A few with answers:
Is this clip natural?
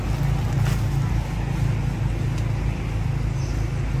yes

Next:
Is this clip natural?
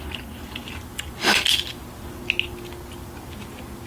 yes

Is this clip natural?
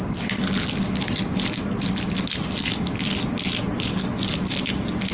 yes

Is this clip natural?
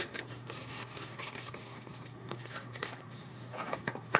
no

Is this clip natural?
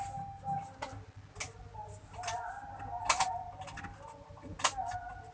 yes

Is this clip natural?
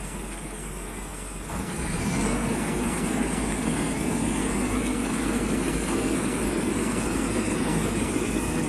no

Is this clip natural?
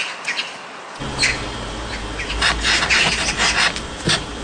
yes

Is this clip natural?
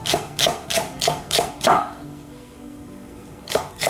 no